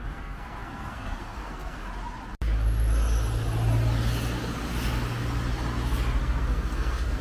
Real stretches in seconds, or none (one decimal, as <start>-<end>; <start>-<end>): 1.9-6.2